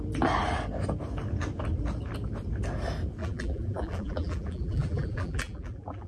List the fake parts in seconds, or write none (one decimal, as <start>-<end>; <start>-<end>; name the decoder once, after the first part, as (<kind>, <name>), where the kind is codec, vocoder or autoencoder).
3.2-6.1 (vocoder, BigVGAN v2)